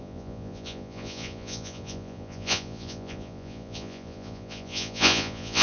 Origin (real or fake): fake